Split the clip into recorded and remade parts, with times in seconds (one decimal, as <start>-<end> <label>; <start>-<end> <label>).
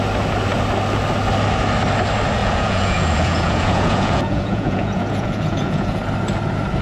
0.0-2.4 recorded; 2.4-6.0 remade; 6.0-6.8 recorded